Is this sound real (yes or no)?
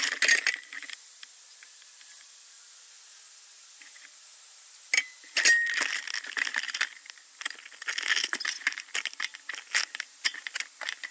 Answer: yes